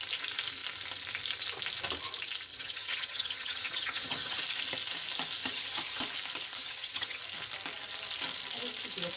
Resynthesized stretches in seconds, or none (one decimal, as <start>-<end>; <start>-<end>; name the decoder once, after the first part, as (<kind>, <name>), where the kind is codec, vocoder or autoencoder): 2.5-4.4 (vocoder, HiFi-GAN); 5.4-6.0; 6.6-7.2